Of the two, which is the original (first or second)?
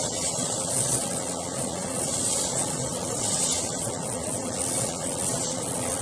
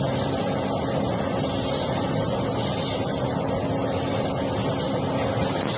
second